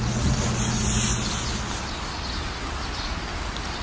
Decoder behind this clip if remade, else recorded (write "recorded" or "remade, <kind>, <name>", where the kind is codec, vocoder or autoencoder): recorded